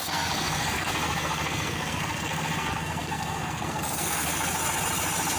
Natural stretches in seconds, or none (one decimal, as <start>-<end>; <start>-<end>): 4.3-5.4